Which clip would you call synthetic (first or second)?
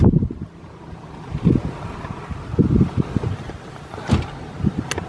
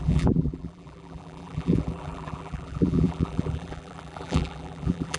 second